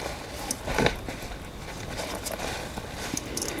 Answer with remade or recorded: recorded